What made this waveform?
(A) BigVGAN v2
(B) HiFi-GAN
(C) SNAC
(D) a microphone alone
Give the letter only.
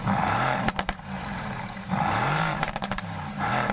A